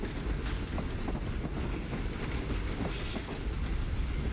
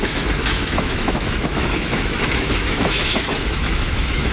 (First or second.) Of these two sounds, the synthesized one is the second